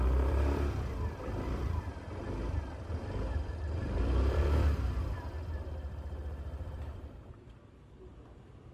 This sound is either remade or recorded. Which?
remade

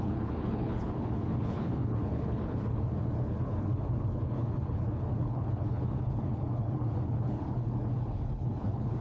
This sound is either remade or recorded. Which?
remade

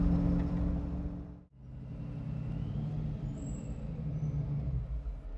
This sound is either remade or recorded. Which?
recorded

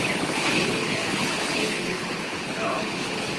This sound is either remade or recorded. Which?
remade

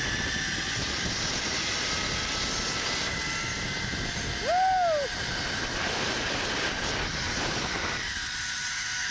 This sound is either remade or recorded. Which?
recorded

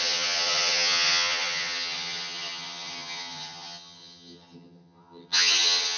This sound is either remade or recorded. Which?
remade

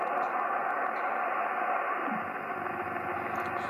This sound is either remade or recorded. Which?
recorded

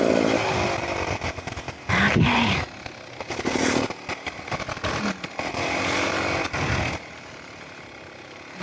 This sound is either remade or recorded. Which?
recorded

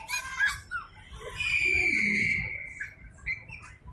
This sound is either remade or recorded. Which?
recorded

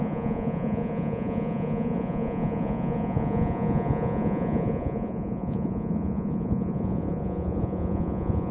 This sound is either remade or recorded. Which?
remade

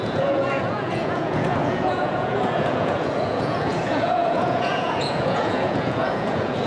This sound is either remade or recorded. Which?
remade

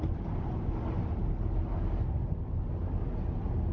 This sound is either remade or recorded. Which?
recorded